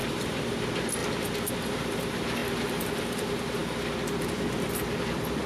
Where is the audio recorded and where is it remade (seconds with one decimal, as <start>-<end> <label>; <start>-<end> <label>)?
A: 0.0-1.0 remade; 1.0-1.6 recorded; 1.6-3.6 remade; 3.6-4.3 recorded; 4.3-5.5 remade